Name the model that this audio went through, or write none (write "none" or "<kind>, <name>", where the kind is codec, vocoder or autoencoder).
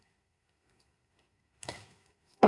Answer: codec, SNAC